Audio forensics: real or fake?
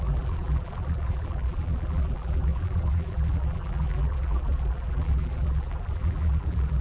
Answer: fake